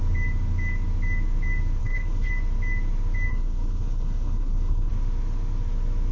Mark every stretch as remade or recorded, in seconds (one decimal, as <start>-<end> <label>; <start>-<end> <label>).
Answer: 0.0-1.8 recorded; 1.8-2.3 remade; 2.3-3.3 recorded; 3.3-4.9 remade; 4.9-6.1 recorded